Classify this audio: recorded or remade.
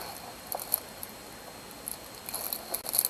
recorded